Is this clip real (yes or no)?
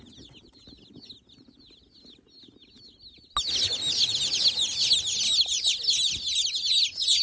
yes